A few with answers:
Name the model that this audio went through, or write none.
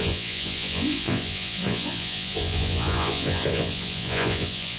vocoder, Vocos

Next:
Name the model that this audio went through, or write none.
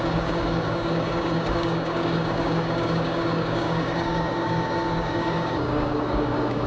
codec, DAC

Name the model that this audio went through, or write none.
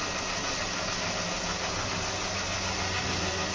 none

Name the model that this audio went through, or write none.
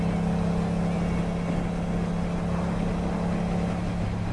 none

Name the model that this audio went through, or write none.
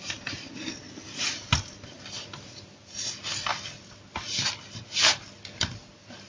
none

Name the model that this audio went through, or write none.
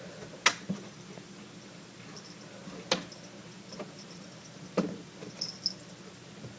none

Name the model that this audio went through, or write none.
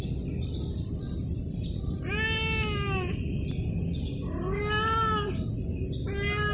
none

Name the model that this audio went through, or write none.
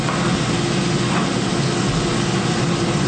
none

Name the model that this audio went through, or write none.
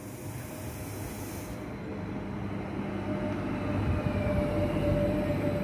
none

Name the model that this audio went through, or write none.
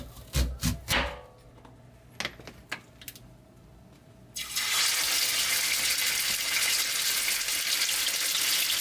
none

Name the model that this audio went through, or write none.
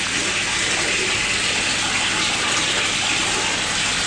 none